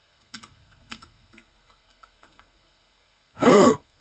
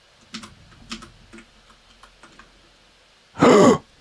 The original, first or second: second